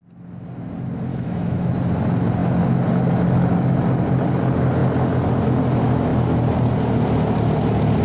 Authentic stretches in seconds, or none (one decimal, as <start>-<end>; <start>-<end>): 0.0-1.1; 1.7-8.0